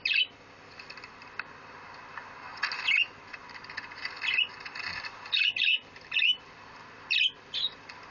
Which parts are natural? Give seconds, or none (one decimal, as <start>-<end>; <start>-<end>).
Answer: 0.0-8.1